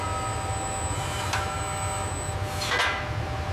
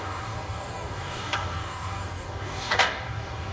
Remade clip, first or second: second